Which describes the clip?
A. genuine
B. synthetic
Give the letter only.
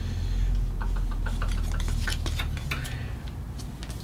A